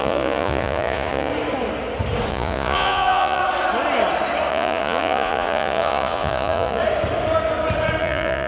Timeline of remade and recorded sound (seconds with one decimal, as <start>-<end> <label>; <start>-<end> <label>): 0.0-1.3 remade; 1.3-2.3 recorded; 2.3-3.4 remade; 3.4-4.5 recorded; 4.5-6.8 remade; 6.8-8.0 recorded; 8.0-8.5 remade